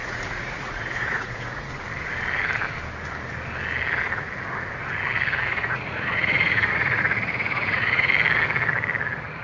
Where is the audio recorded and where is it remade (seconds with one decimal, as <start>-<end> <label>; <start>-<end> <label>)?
0.0-1.7 remade; 1.7-5.5 recorded; 5.5-8.1 remade; 8.1-9.4 recorded